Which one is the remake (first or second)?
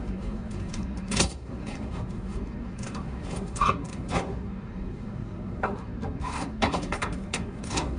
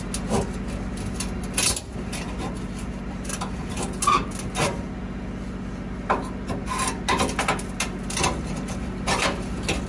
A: first